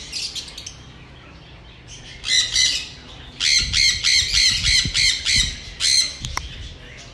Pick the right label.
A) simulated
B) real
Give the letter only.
B